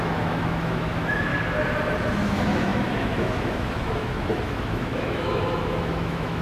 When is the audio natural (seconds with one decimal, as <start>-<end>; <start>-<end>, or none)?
1.3-2.1